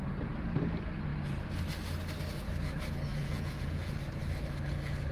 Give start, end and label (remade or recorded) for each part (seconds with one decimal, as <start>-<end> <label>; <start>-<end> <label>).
0.0-3.1 recorded; 3.1-4.0 remade; 4.0-5.1 recorded